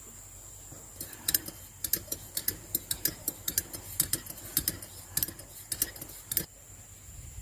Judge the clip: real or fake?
real